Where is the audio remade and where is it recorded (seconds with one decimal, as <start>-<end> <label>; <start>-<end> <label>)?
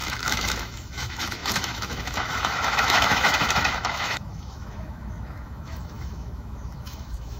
0.0-7.4 remade